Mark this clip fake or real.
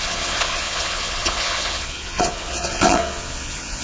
fake